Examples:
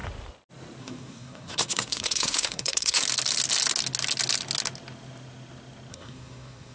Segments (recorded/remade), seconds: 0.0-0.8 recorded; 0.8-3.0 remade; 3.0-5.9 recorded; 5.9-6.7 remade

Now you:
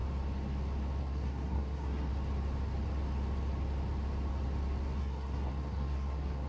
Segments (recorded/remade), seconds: 0.0-1.0 recorded; 1.0-2.1 remade; 2.1-5.0 recorded; 5.0-6.5 remade

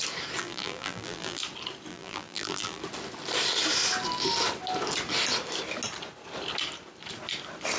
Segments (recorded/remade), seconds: 0.0-0.4 recorded; 0.4-1.4 remade; 1.4-1.9 recorded; 1.9-2.8 remade; 2.8-7.8 recorded

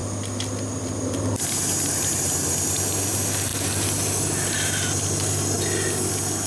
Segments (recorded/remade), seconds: 0.0-6.5 recorded

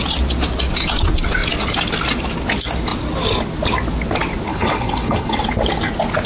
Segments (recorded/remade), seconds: 0.0-4.5 recorded; 4.5-5.4 remade; 5.4-6.3 recorded